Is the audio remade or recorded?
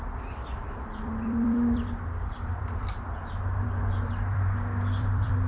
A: remade